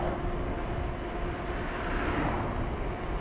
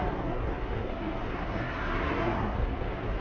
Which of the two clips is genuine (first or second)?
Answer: first